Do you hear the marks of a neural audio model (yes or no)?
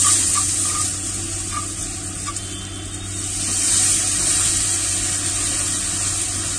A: no